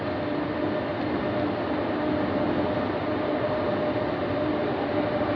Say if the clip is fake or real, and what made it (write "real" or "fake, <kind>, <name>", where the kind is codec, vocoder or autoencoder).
real